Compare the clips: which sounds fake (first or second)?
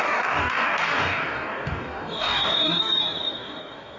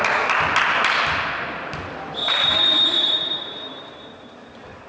first